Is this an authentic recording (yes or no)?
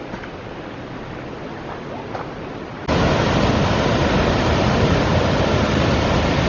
yes